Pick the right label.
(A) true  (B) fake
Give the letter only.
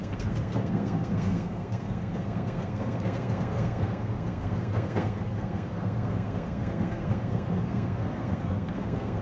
B